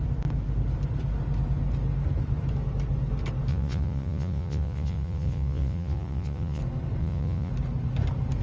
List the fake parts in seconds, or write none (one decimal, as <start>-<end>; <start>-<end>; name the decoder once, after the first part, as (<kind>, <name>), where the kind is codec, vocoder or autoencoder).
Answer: 3.5-6.6 (vocoder, Vocos); 7.0-7.5